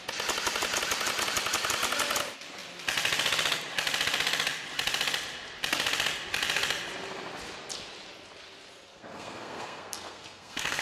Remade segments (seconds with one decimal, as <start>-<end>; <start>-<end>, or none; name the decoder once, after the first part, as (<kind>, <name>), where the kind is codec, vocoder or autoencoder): 8.9-10.8 (codec, SNAC)